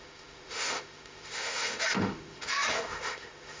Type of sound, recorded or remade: remade